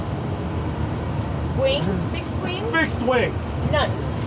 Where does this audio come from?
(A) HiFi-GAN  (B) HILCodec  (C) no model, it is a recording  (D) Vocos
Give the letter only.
C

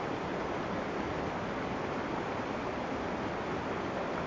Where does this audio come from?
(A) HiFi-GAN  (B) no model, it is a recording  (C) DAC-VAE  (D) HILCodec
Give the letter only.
B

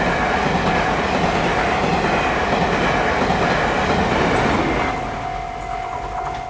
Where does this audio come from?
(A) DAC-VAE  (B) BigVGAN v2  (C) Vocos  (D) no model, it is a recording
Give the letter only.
D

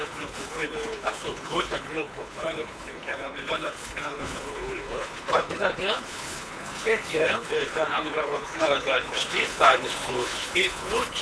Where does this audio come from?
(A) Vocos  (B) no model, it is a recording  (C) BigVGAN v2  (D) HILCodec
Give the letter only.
D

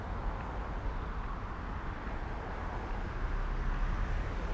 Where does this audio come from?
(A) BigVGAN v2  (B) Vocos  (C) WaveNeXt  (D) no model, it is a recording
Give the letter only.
D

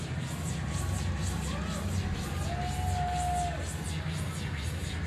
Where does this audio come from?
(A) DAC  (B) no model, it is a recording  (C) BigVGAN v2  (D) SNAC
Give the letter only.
B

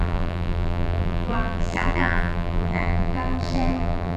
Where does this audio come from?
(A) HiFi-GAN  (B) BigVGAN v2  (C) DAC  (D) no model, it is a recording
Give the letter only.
B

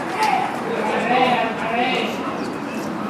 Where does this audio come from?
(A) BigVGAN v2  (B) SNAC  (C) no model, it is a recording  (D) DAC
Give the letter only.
A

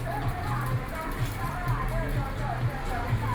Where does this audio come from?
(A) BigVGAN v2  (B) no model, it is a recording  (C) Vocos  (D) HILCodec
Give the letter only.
B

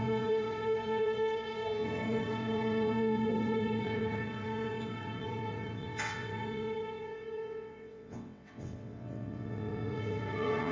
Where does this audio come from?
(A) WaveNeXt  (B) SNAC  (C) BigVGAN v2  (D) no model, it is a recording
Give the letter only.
A